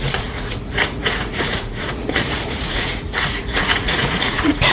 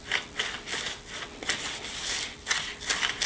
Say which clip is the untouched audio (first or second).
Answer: second